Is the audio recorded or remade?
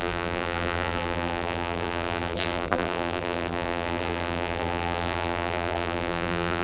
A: remade